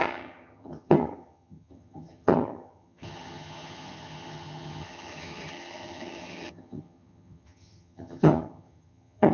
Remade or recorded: remade